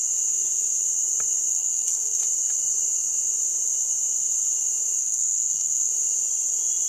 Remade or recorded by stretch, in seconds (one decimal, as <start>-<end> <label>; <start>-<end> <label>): 0.0-1.5 recorded; 1.5-2.2 remade; 2.2-5.0 recorded; 5.0-5.9 remade; 5.9-6.9 recorded